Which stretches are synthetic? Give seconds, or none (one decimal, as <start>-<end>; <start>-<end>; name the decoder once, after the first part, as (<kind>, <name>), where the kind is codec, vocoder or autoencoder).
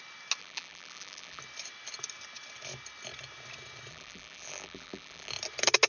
0.4-1.4 (vocoder, BigVGAN v2); 3.9-5.3